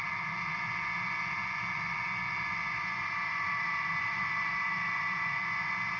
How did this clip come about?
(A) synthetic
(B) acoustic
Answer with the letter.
A